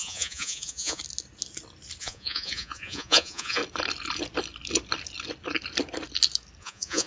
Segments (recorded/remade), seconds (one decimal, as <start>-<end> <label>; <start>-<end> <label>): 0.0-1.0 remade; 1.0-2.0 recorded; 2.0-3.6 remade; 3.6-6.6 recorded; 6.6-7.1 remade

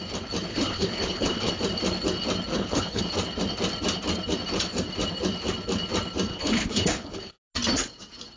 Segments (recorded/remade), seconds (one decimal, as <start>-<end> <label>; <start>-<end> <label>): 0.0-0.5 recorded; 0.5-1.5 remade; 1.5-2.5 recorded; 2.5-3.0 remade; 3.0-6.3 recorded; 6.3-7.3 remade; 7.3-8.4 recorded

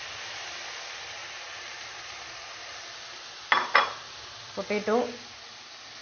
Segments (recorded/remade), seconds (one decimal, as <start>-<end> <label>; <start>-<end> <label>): 0.0-1.2 recorded; 1.2-3.0 remade; 3.0-6.0 recorded

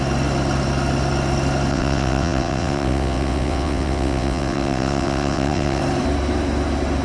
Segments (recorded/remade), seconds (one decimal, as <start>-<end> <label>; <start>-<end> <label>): 0.0-1.7 recorded; 1.7-5.8 remade; 5.8-7.0 recorded